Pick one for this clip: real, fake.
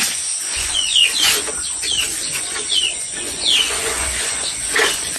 fake